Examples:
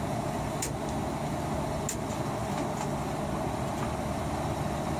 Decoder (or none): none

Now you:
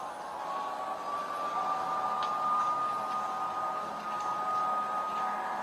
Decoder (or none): none